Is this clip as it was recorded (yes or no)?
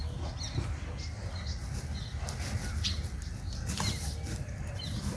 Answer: yes